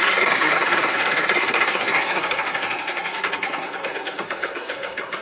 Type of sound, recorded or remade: remade